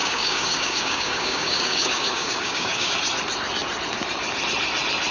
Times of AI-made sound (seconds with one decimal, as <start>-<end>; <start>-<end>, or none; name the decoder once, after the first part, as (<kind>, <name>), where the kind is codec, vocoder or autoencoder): 0.0-2.9 (codec, DAC)